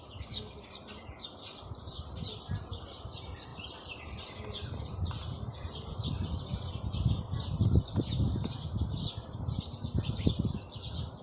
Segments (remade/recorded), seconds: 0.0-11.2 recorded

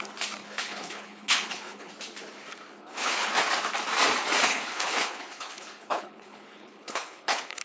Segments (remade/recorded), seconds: 0.0-0.4 recorded; 0.4-1.9 remade; 1.9-2.8 recorded; 2.8-3.3 remade; 3.3-4.5 recorded; 4.5-7.6 remade

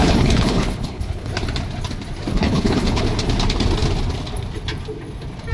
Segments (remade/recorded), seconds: 0.0-1.3 remade; 1.3-2.3 recorded; 2.3-3.0 remade; 3.0-5.5 recorded

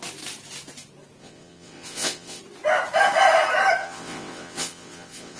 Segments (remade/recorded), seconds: 0.0-1.2 recorded; 1.2-2.4 remade; 2.4-3.8 recorded; 3.8-5.4 remade

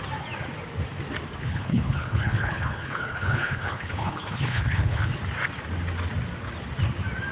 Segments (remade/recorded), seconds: 0.0-1.4 recorded; 1.4-5.1 remade; 5.1-7.3 recorded

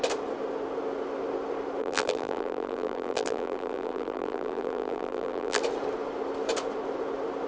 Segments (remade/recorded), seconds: 0.0-1.8 recorded; 1.8-5.6 remade; 5.6-7.5 recorded

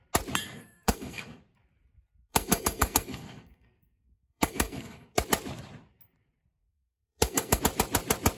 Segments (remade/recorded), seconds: 0.0-0.4 recorded; 0.4-1.4 remade; 1.4-2.3 recorded; 2.3-5.2 remade; 5.2-6.6 recorded; 6.6-7.6 remade; 7.6-8.4 recorded